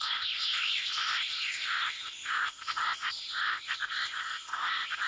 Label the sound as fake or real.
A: fake